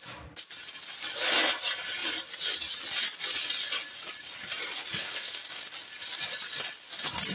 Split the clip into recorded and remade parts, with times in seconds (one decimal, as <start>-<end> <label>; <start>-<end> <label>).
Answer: 0.0-5.0 recorded; 5.0-5.6 remade; 5.6-7.3 recorded